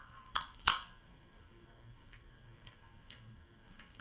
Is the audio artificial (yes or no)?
yes